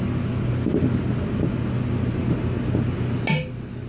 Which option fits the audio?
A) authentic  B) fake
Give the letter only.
A